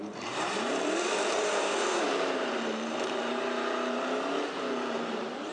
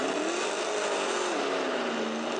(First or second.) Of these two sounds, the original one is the second